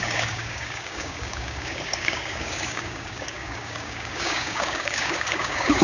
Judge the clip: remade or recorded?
remade